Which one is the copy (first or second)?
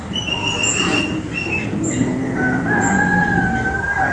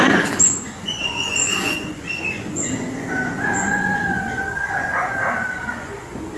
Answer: second